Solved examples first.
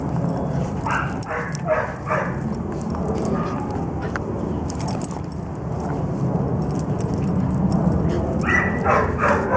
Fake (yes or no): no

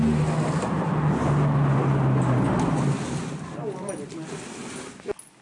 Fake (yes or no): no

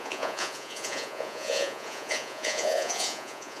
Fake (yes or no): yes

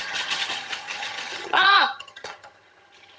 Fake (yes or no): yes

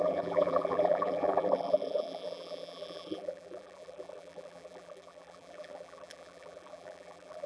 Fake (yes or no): yes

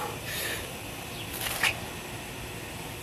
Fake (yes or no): no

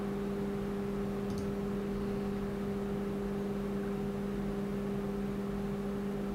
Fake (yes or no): no